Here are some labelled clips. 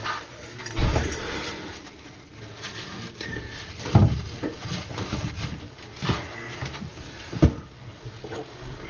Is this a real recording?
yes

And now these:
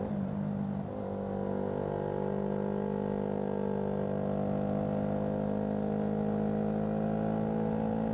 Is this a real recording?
yes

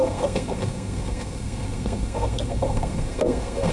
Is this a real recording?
no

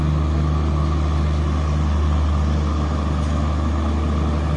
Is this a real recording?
yes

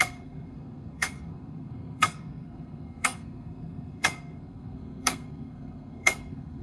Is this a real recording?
no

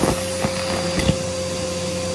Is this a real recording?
yes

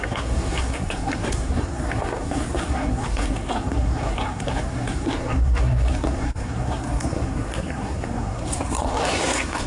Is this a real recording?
no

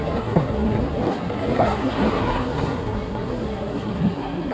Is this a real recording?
no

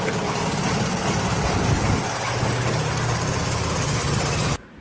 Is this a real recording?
yes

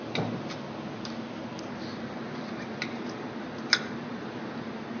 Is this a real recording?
yes